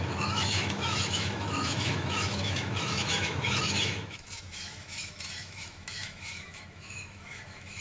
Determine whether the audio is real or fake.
fake